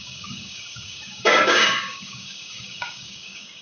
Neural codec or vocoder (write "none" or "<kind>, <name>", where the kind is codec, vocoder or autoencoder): codec, DAC